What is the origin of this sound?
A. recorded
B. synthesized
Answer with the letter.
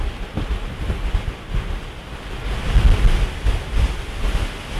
A